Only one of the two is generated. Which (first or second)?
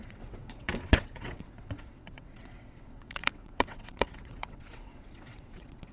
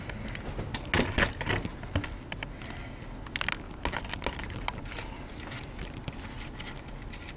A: first